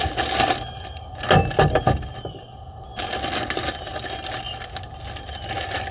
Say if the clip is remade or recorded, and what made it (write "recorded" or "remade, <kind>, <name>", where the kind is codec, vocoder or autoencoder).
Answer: recorded